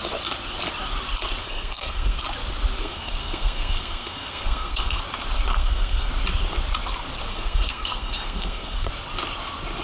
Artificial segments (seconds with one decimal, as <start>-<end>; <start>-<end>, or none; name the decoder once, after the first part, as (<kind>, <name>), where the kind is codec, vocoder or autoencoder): 1.4-2.2 (codec, SNAC); 2.8-5.0; 5.5-6.1; 7.3-8.9